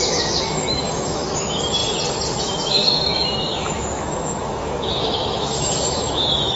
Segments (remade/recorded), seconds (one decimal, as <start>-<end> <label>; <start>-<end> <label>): 0.0-1.8 remade; 1.8-2.4 recorded; 2.4-6.6 remade